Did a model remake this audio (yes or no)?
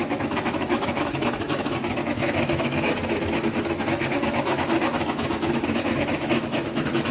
yes